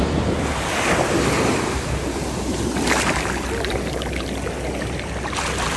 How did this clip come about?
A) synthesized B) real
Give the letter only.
B